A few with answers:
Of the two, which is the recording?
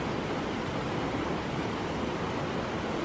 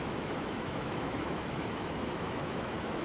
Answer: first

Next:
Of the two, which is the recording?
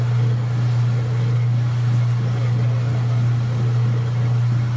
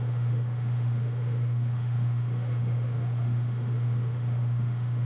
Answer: first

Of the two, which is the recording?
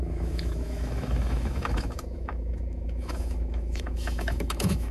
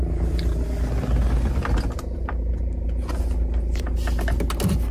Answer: second